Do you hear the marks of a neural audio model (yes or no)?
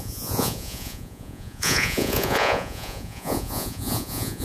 yes